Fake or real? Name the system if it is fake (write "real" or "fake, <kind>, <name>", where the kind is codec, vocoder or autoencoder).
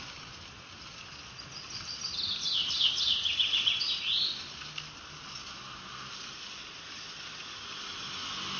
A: real